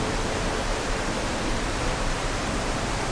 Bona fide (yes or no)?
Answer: no